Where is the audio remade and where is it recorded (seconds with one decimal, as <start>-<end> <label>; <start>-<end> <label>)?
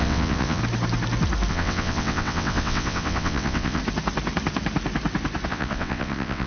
0.0-0.6 remade; 0.6-1.5 recorded; 1.5-3.8 remade; 3.8-5.5 recorded; 5.5-6.5 remade